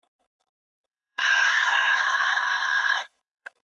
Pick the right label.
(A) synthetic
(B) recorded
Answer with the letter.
A